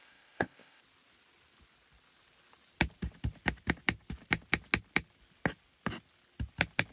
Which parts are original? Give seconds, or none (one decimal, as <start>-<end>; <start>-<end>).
0.8-6.9